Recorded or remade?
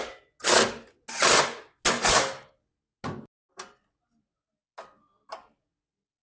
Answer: recorded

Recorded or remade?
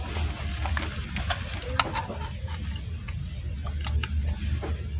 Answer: recorded